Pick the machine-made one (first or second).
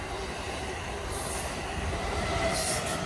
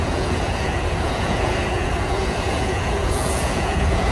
second